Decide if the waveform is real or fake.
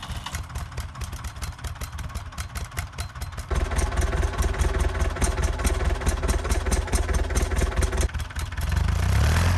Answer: real